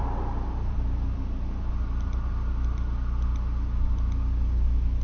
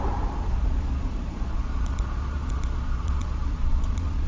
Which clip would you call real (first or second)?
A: first